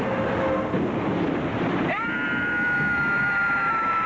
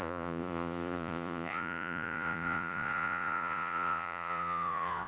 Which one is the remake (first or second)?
second